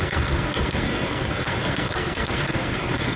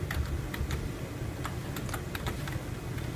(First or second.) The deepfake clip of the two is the first